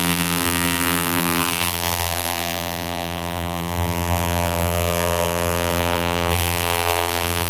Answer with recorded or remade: remade